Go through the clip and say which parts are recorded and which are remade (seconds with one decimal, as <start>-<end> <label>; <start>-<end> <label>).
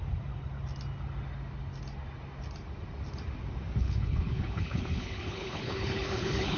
0.0-3.8 recorded; 3.8-6.6 remade